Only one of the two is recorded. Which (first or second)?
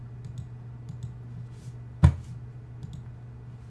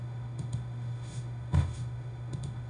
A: first